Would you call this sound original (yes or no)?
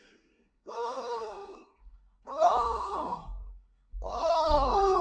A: no